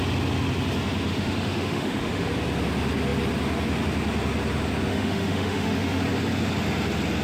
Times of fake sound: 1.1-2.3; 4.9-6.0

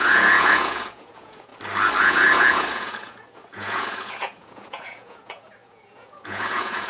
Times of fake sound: 0.0-1.5; 2.0-6.9

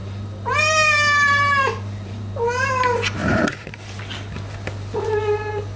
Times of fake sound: 0.0-2.7; 3.2-4.0

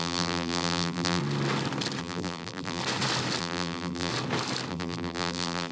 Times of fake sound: 0.0-1.2; 2.0-2.8; 3.4-4.1; 4.7-5.7

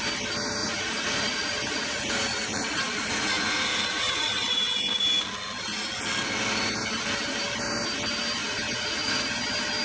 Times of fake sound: 0.6-4.6; 8.4-9.4